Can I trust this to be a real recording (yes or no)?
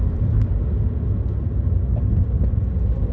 yes